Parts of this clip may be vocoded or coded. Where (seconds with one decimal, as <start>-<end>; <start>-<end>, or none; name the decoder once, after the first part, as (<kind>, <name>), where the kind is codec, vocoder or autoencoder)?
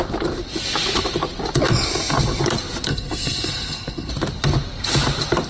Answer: 2.9-4.1 (codec, SNAC)